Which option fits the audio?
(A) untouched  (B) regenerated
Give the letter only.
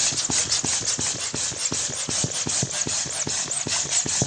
A